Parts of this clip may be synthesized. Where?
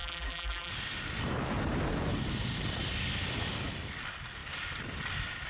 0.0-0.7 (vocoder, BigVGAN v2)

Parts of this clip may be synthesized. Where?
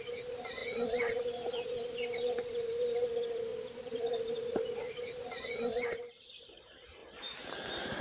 0.6-1.2 (vocoder, BigVGAN v2); 3.5-5.2; 7.0-8.0